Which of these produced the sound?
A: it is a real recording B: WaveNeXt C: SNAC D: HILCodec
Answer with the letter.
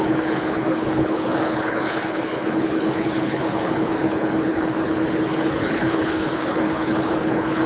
D